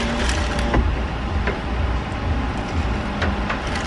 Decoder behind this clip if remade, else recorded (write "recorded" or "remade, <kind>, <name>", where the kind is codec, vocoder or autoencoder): recorded